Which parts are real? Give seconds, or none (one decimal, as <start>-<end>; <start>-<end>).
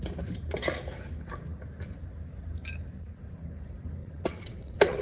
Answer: 0.0-4.0